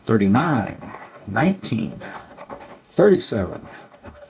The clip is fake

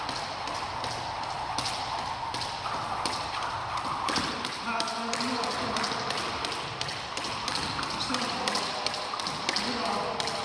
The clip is real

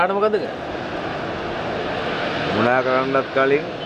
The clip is real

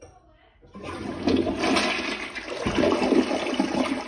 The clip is real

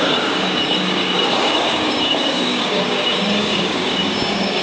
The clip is fake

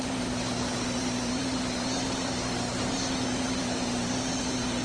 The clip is fake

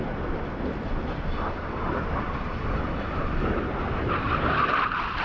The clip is real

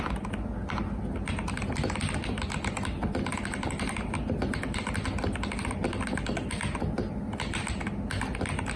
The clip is real